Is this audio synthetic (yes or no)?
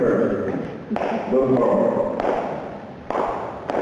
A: yes